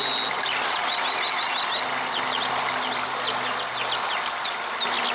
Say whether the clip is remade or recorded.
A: recorded